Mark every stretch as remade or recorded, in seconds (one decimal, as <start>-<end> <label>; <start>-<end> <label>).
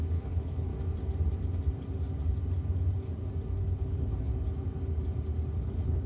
0.0-0.7 remade; 0.7-3.6 recorded; 3.6-4.3 remade; 4.3-5.6 recorded; 5.6-6.1 remade